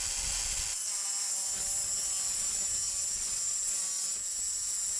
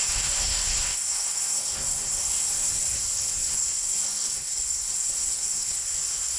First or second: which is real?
first